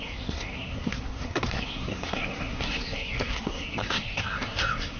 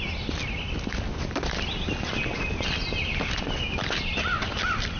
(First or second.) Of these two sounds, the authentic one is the second